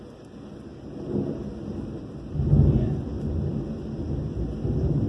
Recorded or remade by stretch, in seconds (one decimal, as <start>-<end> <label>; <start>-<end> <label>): 0.0-5.1 recorded